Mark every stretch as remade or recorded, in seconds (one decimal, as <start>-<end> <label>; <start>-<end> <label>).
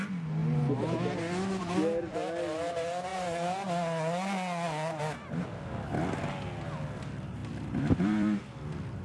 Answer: 0.0-7.4 recorded; 7.4-9.0 remade